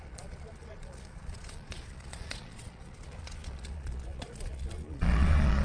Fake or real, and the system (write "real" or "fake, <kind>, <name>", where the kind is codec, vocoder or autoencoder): fake, vocoder, Vocos